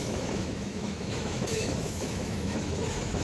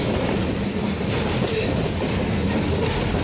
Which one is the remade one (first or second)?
first